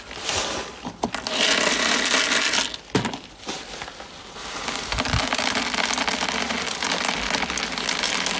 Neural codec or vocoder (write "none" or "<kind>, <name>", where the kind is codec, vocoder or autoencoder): none